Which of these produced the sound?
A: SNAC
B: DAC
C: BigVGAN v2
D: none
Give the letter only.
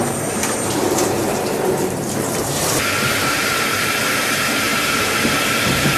C